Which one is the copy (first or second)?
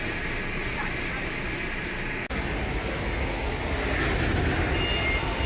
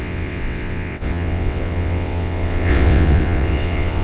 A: second